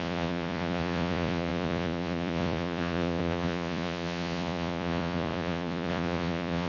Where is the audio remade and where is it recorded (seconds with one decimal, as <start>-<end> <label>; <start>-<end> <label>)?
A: 0.0-6.7 remade